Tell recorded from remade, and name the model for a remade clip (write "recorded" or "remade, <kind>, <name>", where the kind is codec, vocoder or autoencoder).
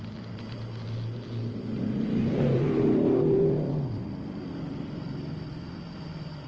recorded